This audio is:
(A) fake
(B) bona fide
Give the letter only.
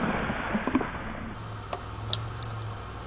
B